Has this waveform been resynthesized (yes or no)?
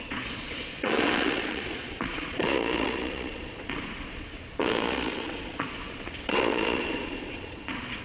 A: yes